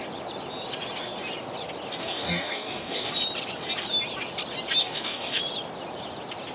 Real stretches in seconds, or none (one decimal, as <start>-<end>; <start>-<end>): 0.0-2.0; 3.1-4.8; 5.4-6.5